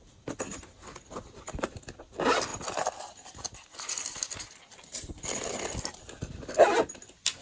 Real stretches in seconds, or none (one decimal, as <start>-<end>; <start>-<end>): 0.0-7.4